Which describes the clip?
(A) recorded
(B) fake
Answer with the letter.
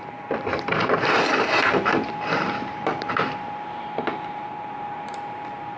B